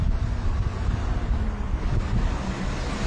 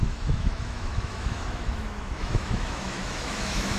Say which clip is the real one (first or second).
first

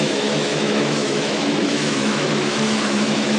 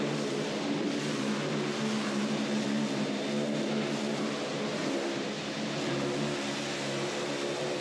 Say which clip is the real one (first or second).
second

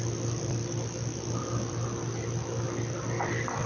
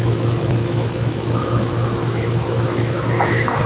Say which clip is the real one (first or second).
first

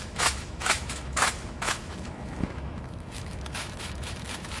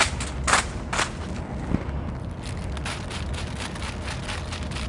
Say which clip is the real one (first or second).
second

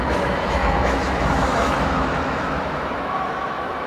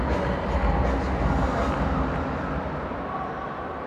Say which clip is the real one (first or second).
second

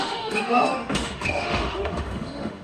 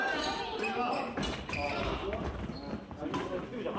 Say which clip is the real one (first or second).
second